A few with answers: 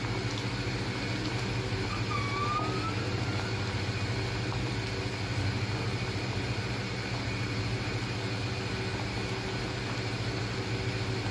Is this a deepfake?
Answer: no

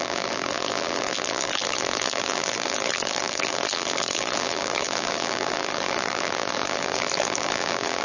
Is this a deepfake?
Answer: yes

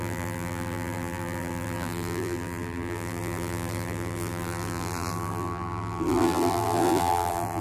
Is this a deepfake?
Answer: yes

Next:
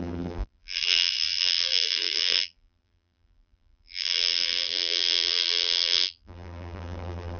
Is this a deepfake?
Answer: yes